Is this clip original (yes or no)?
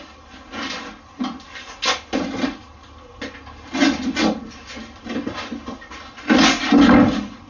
yes